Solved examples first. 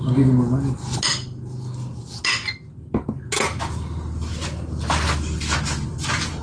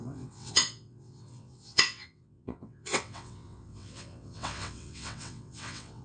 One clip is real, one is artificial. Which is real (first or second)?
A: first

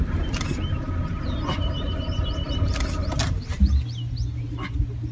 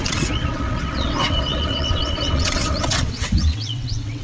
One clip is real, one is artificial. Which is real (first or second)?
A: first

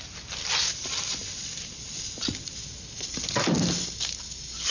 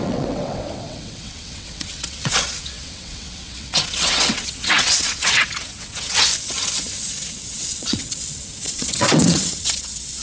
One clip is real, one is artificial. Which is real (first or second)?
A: first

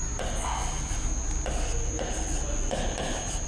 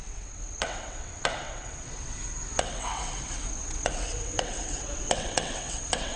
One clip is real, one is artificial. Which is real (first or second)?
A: first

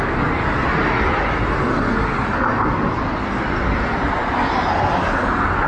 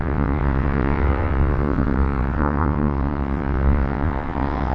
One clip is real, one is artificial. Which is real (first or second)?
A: first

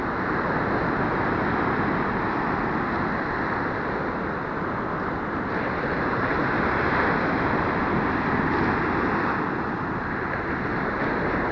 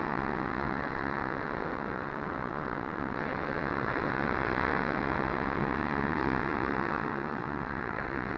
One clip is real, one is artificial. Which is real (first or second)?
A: first